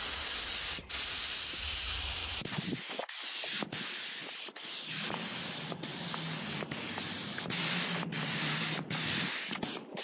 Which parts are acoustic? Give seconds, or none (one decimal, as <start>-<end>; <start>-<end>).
0.0-2.2; 2.9-10.0